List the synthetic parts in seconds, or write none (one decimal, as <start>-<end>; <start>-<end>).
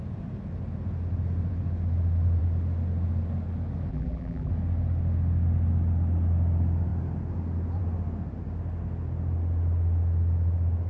3.9-4.5